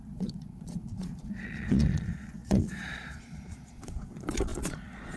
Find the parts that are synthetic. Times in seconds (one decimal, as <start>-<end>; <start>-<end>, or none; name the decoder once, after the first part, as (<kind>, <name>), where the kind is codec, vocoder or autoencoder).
0.0-5.2 (vocoder, Vocos)